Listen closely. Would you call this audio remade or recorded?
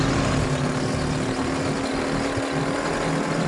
recorded